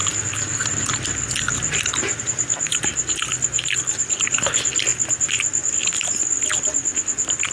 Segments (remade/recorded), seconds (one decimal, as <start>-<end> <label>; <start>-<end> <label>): 0.0-7.5 recorded